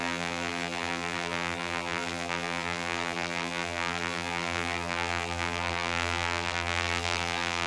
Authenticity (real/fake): fake